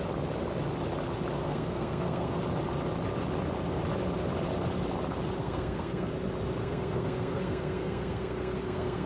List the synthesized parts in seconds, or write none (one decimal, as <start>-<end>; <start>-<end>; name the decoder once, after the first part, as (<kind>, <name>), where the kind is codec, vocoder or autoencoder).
1.4-2.4 (codec, SNAC); 5.4-6.1; 6.6-9.1